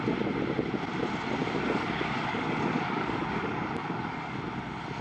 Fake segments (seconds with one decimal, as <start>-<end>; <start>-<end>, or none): 1.4-4.4